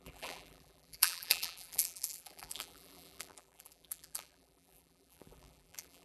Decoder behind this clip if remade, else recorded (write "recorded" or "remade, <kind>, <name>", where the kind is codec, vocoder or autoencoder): remade, vocoder, BigVGAN v2